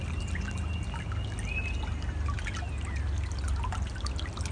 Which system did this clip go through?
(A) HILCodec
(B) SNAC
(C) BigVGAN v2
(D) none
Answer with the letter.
D